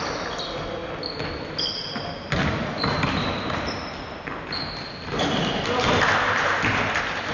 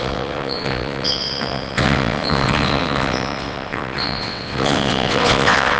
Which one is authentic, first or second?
first